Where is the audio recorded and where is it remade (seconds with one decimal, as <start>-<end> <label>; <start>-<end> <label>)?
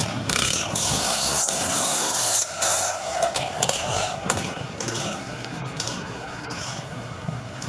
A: 0.0-7.7 remade